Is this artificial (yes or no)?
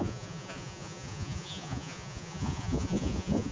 yes